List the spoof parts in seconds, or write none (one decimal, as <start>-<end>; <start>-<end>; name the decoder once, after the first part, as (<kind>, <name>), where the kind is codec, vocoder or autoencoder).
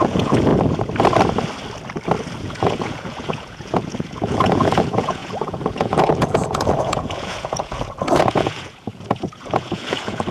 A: 0.0-0.5 (vocoder, Vocos); 2.4-10.3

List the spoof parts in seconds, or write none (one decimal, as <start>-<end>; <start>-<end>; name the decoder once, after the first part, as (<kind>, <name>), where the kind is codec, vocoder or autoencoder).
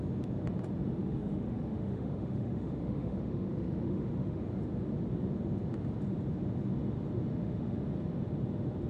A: 1.0-4.4 (autoencoder, DAC-VAE); 7.3-7.8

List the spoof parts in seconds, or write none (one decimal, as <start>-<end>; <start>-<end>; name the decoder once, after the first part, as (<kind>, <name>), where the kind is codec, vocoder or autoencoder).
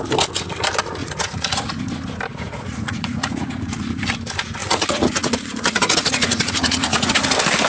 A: 1.0-1.8 (vocoder, Vocos); 2.3-3.8; 4.6-7.1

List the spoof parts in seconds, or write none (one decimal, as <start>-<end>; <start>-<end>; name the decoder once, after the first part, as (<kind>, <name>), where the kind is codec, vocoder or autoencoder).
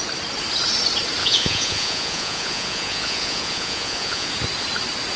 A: 1.2-4.3 (vocoder, Vocos)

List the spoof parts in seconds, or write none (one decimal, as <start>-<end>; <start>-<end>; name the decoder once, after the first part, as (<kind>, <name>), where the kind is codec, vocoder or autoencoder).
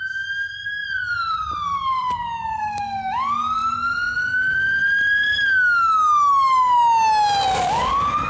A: 0.8-3.0 (vocoder, BigVGAN v2)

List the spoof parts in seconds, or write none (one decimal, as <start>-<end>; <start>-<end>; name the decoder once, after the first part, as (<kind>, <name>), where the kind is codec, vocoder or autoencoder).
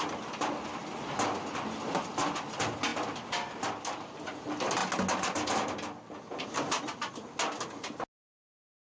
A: none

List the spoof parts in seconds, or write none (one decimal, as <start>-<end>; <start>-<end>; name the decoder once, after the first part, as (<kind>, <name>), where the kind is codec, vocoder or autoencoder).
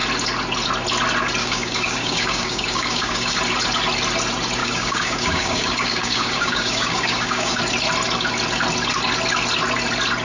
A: 1.4-3.4 (codec, DAC); 4.6-7.6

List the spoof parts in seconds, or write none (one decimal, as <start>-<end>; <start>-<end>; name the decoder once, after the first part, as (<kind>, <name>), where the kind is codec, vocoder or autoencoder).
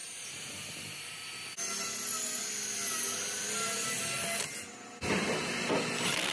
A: 0.0-1.2 (vocoder, BigVGAN v2)